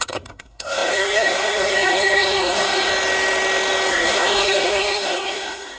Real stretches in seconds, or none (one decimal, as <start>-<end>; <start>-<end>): 2.9-3.9